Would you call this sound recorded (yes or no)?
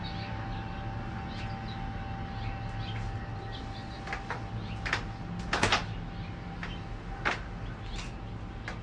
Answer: yes